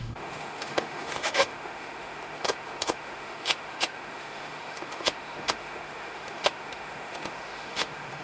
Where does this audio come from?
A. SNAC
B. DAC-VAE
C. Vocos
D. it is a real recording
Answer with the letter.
B